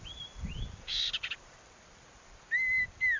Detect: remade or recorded remade